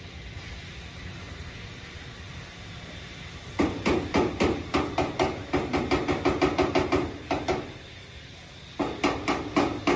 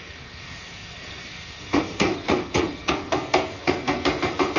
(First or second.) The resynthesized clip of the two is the second